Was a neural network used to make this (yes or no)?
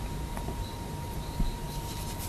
yes